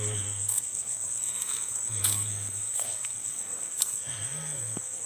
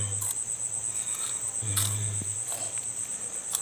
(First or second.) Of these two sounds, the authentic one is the second